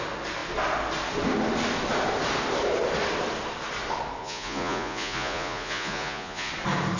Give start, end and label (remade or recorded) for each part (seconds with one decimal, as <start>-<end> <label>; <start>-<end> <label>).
0.0-4.2 recorded; 4.2-6.5 remade; 6.5-7.0 recorded